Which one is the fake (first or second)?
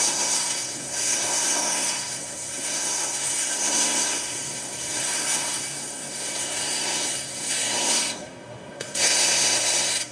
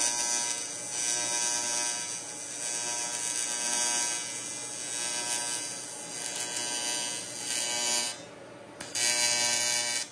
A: first